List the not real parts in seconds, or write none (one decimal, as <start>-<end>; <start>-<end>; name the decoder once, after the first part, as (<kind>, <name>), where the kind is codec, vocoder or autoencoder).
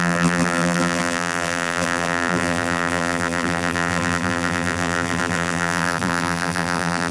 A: 0.0-7.1 (vocoder, BigVGAN v2)